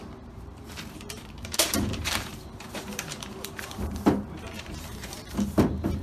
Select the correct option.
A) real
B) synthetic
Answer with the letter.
B